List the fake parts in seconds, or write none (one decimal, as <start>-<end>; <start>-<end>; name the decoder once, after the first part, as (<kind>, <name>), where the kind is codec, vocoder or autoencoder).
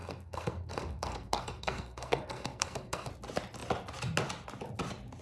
0.0-3.1 (codec, SNAC)